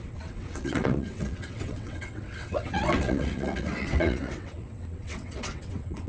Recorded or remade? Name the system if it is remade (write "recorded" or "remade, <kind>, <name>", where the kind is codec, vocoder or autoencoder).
remade, vocoder, WaveNeXt